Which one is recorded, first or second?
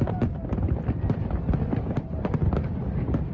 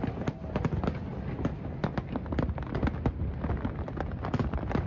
second